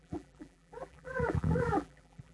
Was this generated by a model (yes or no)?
yes